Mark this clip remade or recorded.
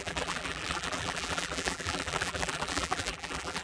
remade